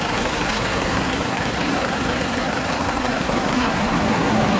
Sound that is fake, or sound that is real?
fake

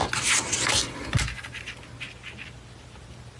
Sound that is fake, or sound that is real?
real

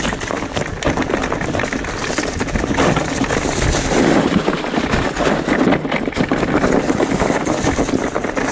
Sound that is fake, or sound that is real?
real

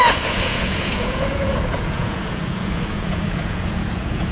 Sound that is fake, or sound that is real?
fake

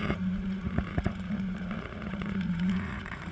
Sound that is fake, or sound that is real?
fake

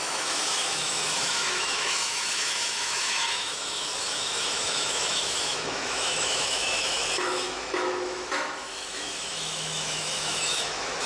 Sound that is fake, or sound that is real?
fake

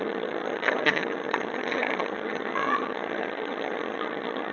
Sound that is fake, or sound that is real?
fake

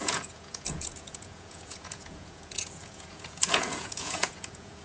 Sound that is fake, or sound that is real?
fake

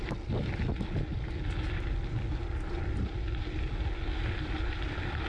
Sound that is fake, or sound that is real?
real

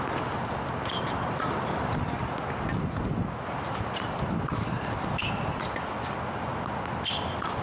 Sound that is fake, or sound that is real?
real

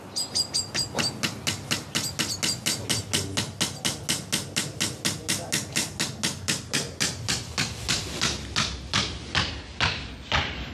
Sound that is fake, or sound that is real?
real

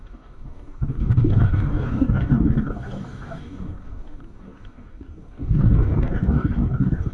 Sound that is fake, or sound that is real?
fake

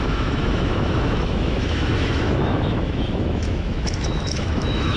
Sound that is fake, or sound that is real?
fake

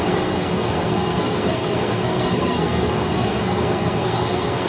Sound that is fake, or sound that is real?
fake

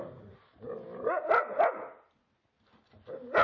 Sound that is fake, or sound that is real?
real